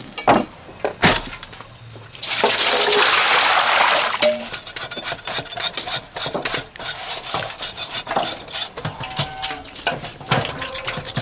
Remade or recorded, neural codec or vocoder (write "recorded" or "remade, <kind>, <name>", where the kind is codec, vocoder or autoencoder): recorded